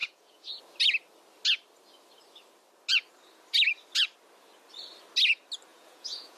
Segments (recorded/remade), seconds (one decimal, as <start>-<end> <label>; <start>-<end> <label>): 0.0-0.6 remade; 0.6-5.7 recorded; 5.7-6.4 remade